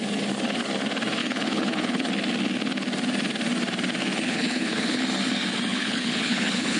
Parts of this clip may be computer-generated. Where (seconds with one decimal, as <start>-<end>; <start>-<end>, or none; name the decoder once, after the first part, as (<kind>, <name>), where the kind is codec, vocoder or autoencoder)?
1.2-2.1 (codec, HILCodec); 4.0-5.0; 5.7-6.8